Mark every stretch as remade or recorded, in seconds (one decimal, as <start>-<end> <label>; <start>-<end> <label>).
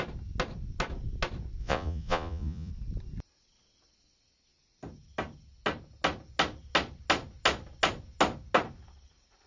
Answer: 0.0-1.6 recorded; 1.6-2.7 remade; 2.7-9.5 recorded